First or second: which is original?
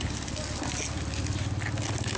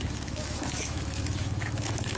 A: first